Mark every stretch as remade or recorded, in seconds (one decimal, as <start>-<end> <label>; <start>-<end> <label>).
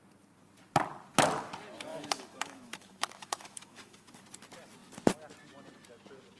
0.0-1.9 recorded; 1.9-4.2 remade; 4.2-6.4 recorded